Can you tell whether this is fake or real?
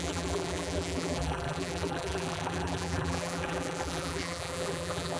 fake